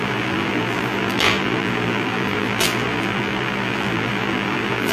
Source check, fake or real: fake